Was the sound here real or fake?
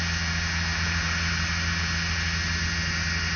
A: real